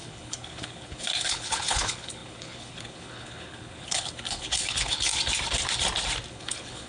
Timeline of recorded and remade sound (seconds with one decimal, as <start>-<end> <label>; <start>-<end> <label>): 0.0-5.1 remade; 5.1-6.3 recorded; 6.3-6.9 remade